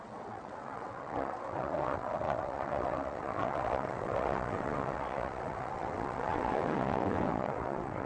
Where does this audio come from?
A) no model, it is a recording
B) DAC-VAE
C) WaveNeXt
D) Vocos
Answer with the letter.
C